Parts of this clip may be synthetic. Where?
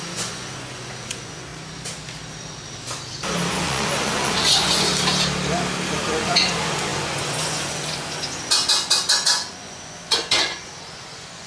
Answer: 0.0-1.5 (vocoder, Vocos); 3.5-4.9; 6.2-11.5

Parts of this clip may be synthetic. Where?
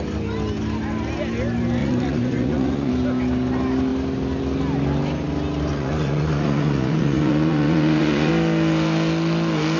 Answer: 1.8-2.9 (vocoder, Vocos); 5.7-8.3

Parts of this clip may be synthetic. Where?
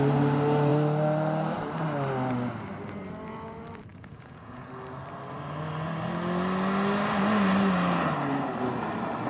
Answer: 3.9-4.7 (vocoder, Vocos)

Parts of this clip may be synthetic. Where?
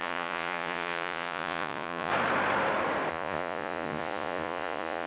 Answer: 0.0-2.1 (vocoder, Vocos); 3.1-5.1